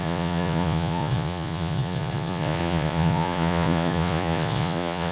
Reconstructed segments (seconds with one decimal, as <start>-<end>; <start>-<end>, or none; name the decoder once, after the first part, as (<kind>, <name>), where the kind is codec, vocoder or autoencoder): 0.0-5.1 (vocoder, Vocos)